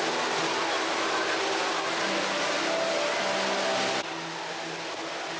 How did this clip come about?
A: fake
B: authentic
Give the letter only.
B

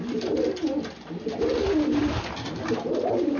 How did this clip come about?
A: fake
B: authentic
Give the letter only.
B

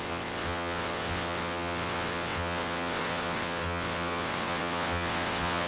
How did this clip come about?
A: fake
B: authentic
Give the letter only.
A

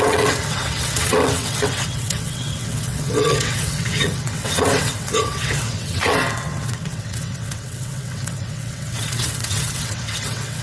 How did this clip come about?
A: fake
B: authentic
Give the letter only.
A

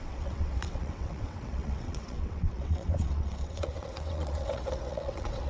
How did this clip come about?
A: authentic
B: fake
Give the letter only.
B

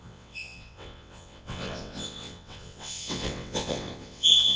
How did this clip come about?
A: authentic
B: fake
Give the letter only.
B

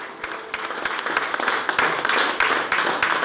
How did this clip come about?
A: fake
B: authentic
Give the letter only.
B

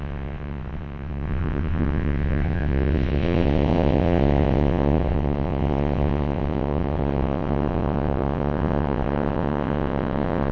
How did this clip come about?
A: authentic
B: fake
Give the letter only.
B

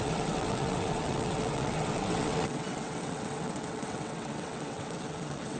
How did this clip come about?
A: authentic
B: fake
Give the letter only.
B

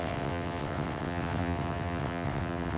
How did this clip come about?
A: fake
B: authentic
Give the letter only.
A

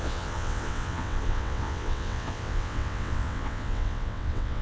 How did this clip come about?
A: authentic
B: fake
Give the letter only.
B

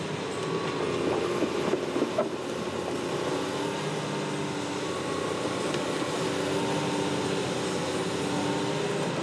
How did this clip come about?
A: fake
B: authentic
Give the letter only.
B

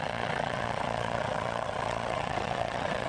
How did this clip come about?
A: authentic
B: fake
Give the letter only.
B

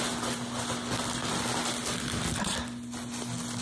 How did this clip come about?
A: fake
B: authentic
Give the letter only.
B